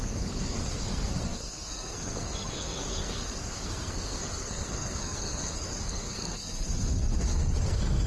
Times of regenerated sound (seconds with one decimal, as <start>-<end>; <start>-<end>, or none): 0.0-8.1